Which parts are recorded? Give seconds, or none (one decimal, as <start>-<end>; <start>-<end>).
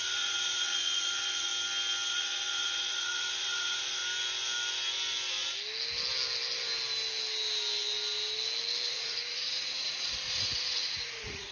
1.5-2.1; 4.0-8.9